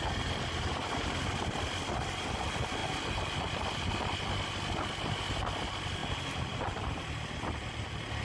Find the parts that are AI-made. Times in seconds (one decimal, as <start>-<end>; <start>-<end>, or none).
none